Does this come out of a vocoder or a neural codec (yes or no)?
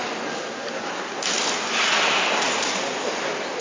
no